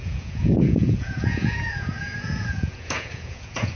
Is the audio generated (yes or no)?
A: yes